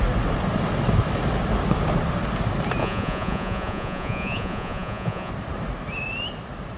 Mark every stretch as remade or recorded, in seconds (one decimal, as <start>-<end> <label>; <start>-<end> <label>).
0.0-2.8 recorded; 2.8-5.3 remade; 5.3-6.8 recorded